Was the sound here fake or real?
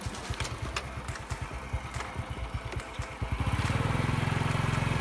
real